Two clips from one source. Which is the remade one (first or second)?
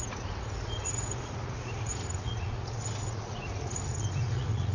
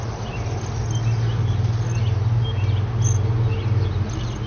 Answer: first